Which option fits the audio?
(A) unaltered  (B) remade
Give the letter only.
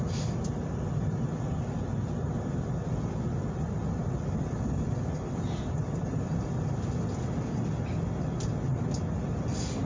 A